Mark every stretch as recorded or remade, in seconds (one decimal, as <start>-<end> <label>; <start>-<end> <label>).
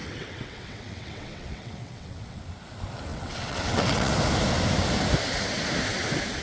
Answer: 0.0-2.4 remade; 2.4-3.1 recorded; 3.1-4.1 remade; 4.1-6.4 recorded